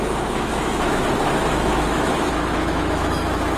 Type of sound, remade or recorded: remade